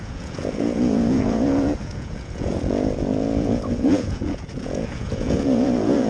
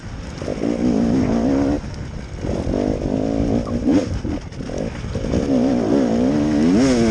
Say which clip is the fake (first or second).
first